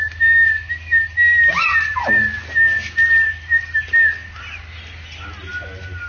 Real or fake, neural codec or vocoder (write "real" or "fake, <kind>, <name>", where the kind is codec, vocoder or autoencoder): real